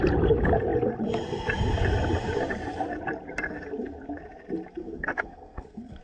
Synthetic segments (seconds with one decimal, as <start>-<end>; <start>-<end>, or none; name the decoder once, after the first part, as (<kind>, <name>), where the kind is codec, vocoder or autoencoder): 4.8-6.0 (codec, SNAC)